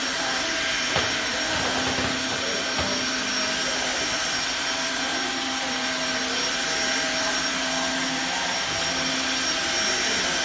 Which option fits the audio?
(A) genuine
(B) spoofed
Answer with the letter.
A